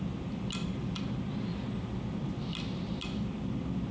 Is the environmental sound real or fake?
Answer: real